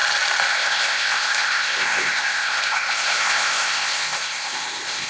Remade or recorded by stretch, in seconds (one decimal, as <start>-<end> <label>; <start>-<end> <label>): 0.0-0.5 recorded; 0.5-5.1 remade